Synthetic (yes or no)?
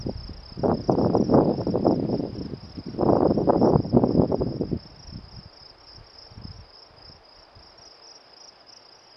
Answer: no